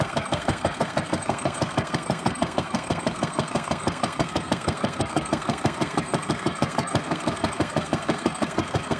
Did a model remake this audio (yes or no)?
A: yes